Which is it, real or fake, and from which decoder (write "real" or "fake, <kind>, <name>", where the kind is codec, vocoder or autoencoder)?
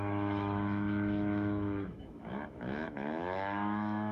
fake, autoencoder, DAC-VAE